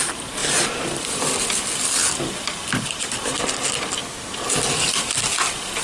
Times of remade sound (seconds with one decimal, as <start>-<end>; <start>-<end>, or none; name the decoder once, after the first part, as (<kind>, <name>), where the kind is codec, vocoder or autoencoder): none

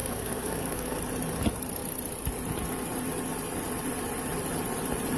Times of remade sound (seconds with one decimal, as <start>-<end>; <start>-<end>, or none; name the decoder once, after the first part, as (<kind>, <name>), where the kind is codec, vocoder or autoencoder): 0.0-1.0 (codec, SNAC)

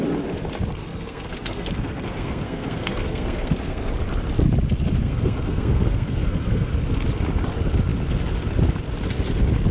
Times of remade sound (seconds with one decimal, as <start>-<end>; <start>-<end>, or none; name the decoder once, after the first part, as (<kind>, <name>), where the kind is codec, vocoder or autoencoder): 0.8-3.9 (codec, SNAC); 5.0-6.7